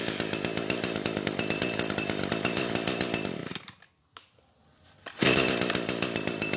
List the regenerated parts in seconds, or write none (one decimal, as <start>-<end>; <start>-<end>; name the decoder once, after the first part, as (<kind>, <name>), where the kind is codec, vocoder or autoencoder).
none